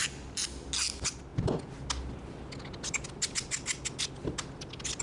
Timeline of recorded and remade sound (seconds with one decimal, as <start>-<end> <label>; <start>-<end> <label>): 0.0-5.0 recorded